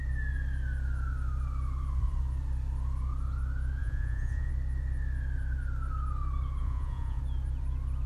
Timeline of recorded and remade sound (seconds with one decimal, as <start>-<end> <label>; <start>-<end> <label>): 0.0-3.8 recorded; 3.8-4.5 remade; 4.5-6.6 recorded; 6.6-7.2 remade; 7.2-8.1 recorded